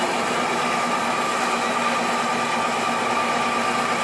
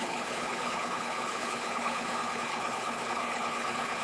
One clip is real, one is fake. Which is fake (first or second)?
second